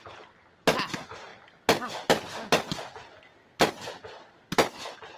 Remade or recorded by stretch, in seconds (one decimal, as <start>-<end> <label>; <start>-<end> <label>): 0.0-5.2 recorded